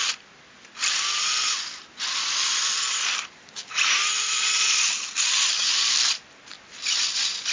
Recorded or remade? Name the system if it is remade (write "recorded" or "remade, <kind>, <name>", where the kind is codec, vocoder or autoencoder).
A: recorded